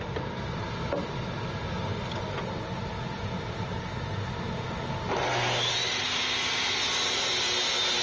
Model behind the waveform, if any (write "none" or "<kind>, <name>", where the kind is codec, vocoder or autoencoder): none